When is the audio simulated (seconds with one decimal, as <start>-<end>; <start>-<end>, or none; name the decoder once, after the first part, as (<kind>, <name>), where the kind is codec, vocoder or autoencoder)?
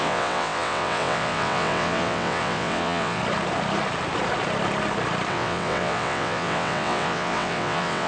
0.0-3.2 (vocoder, WaveNeXt); 5.3-8.1